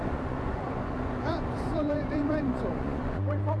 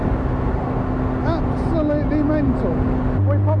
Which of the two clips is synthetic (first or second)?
first